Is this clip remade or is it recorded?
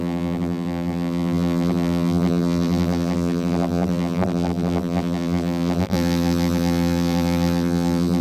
remade